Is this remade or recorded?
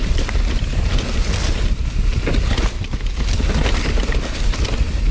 recorded